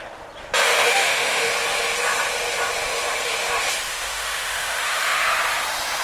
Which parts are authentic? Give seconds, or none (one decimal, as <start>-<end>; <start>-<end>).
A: 0.0-0.7; 1.5-3.9; 5.2-6.0